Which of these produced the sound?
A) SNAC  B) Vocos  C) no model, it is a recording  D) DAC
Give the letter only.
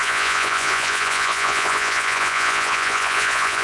B